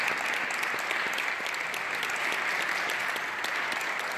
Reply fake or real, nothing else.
real